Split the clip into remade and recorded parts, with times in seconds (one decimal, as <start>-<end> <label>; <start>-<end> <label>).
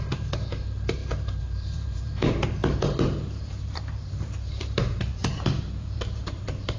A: 0.0-6.8 remade